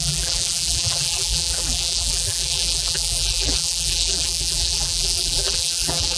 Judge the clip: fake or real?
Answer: fake